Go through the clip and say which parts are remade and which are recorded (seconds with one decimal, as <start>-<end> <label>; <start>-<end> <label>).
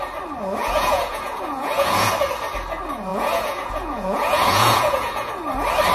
0.0-0.6 recorded; 0.6-2.1 remade; 2.1-3.1 recorded; 3.1-5.3 remade; 5.3-5.9 recorded